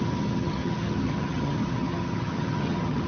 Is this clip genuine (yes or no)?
no